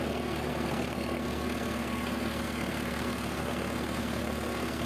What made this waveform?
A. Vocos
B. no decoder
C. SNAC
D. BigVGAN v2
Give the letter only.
C